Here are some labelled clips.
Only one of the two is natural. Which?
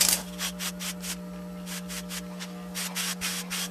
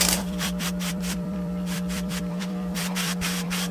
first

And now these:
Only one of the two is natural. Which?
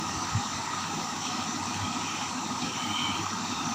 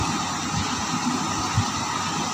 second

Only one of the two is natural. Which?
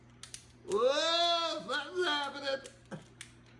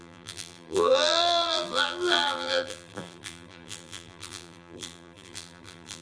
first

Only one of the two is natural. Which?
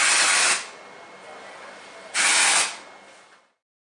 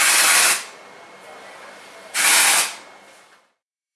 first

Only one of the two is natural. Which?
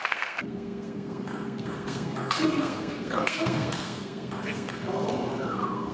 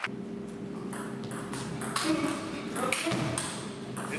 second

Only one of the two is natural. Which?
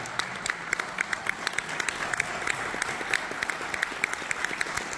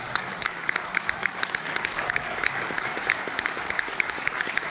first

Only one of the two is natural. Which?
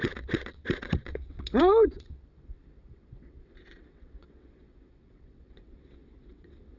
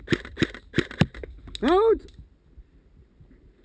second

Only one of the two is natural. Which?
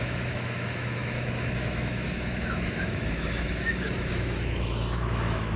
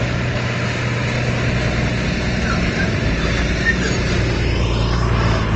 second